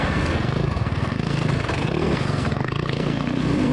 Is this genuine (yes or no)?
no